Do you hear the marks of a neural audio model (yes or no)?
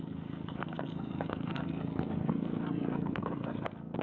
yes